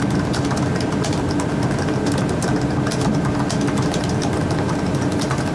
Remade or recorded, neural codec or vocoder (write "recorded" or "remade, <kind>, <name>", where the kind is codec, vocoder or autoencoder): recorded